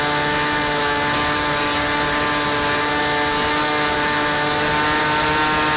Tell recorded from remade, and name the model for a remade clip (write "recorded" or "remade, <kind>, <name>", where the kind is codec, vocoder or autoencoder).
recorded